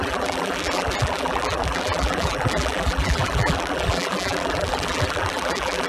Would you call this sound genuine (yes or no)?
no